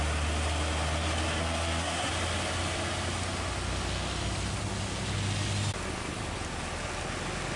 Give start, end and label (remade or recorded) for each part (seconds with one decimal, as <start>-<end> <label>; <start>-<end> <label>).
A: 0.0-1.4 recorded; 1.4-2.1 remade; 2.1-7.6 recorded